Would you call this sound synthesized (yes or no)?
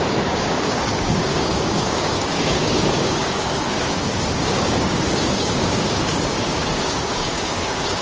yes